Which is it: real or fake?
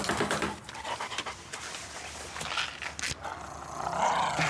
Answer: real